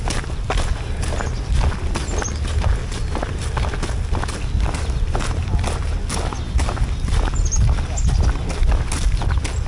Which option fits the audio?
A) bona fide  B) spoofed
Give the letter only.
A